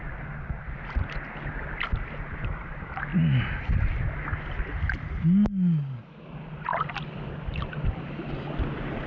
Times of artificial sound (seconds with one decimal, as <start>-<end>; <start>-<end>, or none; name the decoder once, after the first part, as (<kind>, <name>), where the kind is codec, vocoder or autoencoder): 6.7-8.1 (vocoder, BigVGAN v2)